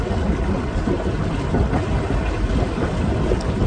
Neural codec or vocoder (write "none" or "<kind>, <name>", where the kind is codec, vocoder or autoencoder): none